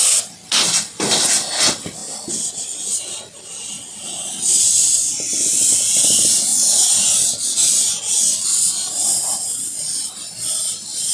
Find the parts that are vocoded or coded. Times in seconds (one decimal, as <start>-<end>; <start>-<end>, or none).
none